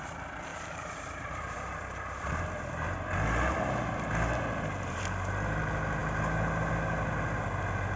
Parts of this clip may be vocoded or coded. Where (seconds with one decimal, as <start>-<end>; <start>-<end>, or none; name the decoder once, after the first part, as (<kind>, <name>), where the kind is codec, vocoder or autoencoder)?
0.5-5.3 (vocoder, BigVGAN v2)